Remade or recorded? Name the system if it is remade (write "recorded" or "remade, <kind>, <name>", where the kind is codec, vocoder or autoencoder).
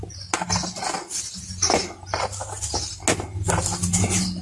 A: recorded